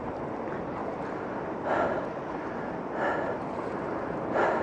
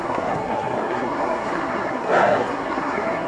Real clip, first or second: first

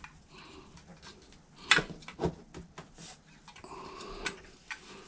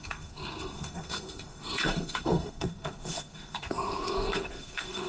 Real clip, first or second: first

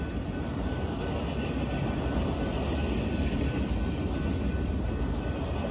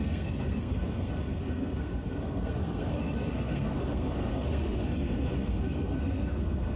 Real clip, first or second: first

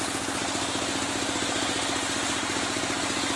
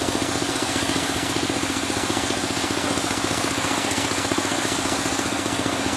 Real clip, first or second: first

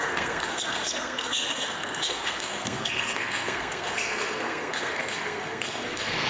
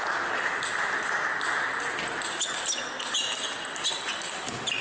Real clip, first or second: second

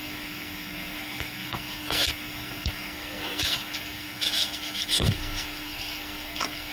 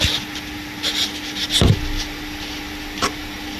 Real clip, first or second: second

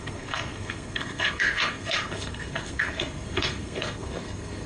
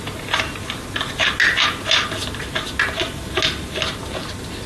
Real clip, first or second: second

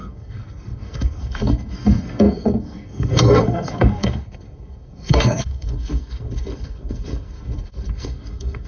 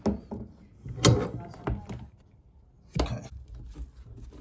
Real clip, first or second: second